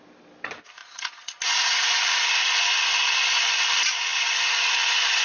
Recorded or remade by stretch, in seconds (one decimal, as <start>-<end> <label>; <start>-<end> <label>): 0.0-0.8 recorded; 0.8-1.4 remade; 1.4-5.2 recorded